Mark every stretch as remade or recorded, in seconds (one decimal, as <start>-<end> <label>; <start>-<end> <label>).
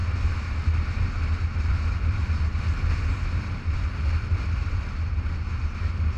0.0-3.1 recorded; 3.1-6.2 remade